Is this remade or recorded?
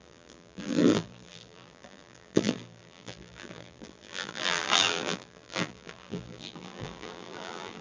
remade